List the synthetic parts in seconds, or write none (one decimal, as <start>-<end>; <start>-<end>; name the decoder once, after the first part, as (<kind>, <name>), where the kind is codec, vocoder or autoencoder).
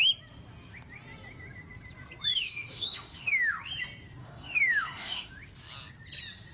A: 2.3-3.5 (autoencoder, DAC-VAE); 4.2-5.3